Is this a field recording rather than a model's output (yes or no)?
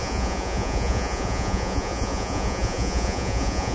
no